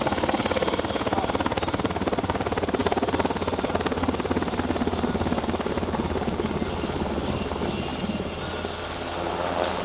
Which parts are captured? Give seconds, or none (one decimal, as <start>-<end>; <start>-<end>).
0.0-9.8